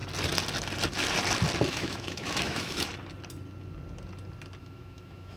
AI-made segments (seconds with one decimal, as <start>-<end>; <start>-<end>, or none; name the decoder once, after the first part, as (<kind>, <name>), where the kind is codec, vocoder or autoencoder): 1.7-2.9 (autoencoder, DAC-VAE); 4.6-5.4